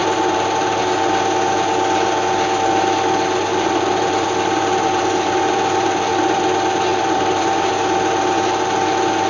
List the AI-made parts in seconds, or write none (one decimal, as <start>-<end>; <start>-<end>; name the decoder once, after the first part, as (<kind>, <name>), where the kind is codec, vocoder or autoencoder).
0.0-0.8 (vocoder, BigVGAN v2); 3.5-6.4; 6.9-7.7